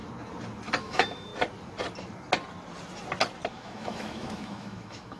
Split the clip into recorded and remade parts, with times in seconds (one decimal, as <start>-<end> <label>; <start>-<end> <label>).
0.0-0.8 recorded; 0.8-1.3 remade; 1.3-3.5 recorded; 3.5-5.2 remade